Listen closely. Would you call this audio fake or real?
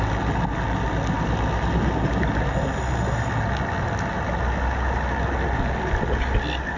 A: real